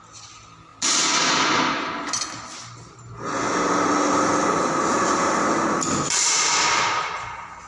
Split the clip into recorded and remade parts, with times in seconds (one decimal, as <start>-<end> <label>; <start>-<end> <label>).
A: 0.0-7.7 recorded